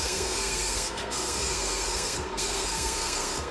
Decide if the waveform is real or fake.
fake